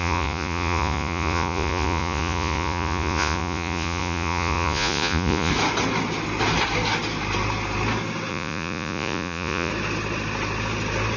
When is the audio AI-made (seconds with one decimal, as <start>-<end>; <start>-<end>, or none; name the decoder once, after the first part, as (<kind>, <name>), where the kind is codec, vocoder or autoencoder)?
0.0-5.5 (vocoder, Vocos); 8.3-9.7